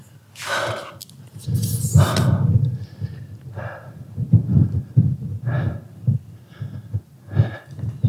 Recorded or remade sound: recorded